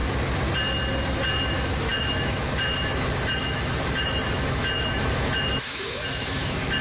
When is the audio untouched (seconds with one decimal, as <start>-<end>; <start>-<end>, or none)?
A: 0.0-1.4